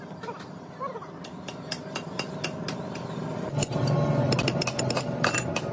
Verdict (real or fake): real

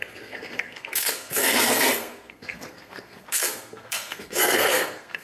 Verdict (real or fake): fake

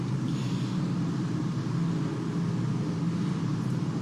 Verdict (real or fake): real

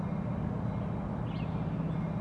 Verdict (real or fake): real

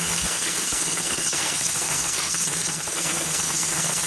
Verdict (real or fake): fake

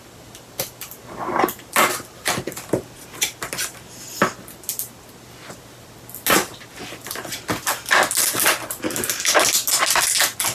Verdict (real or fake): real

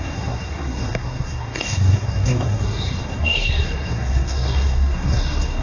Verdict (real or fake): fake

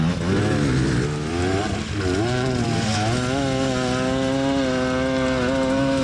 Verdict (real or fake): real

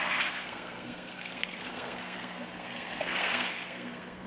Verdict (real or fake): fake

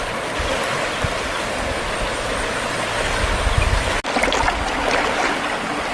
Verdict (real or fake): real